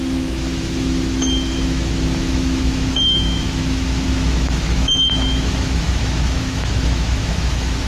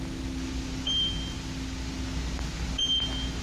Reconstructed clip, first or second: first